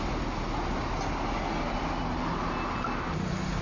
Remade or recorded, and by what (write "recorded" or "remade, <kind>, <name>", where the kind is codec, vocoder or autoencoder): recorded